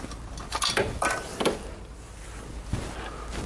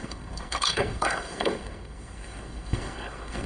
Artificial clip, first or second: second